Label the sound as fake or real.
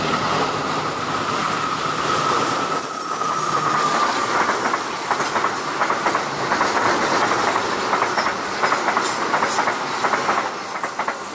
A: real